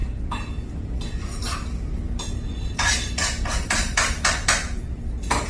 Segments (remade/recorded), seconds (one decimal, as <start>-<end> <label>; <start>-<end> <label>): 0.0-5.5 recorded